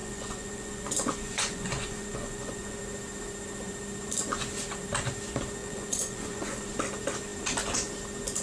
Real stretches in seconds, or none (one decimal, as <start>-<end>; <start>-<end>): 2.8-5.6; 6.6-8.4